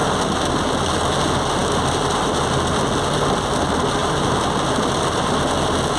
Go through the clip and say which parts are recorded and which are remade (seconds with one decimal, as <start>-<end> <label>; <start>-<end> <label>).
0.0-4.0 recorded; 4.0-5.5 remade; 5.5-6.0 recorded